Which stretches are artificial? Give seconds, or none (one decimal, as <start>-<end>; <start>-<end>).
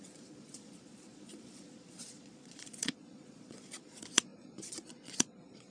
0.0-5.7